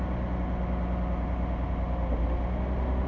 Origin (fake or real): real